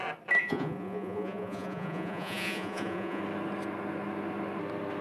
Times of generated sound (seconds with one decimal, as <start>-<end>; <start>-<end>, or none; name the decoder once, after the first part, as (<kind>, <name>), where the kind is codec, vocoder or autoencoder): 0.4-3.2 (vocoder, Vocos)